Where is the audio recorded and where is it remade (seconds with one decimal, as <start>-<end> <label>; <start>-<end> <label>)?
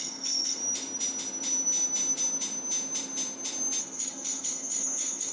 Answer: 0.0-0.6 remade; 0.6-3.8 recorded; 3.8-5.3 remade